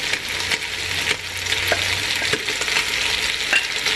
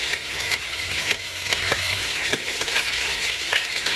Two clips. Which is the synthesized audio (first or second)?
second